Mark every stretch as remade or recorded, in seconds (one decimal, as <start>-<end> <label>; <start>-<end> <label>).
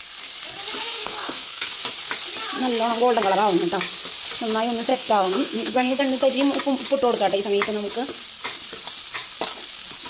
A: 0.0-0.8 recorded; 0.8-1.7 remade; 1.7-4.9 recorded; 4.9-6.0 remade; 6.0-10.1 recorded